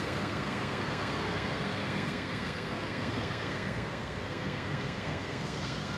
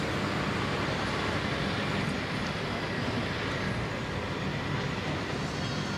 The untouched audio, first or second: second